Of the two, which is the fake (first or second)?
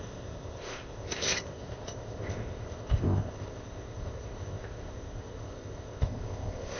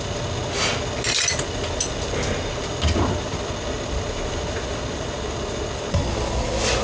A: first